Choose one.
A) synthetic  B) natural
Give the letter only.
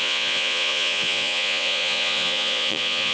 A